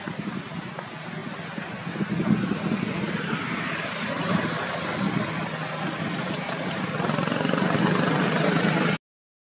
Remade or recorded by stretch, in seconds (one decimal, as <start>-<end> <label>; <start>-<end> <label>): 0.0-9.4 recorded